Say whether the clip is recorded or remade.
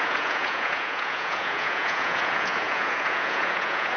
remade